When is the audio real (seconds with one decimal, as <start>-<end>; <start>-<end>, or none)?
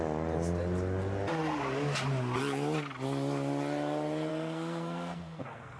0.0-4.3